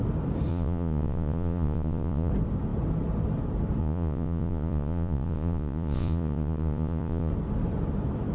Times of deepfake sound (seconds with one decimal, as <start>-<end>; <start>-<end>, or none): 0.5-2.3; 3.8-7.3